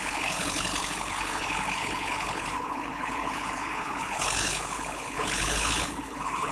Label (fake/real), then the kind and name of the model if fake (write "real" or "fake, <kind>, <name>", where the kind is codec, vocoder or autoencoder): fake, codec, HILCodec